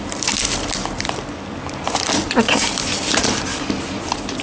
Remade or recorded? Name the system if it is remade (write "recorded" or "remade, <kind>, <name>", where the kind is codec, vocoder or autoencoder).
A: remade, vocoder, BigVGAN v2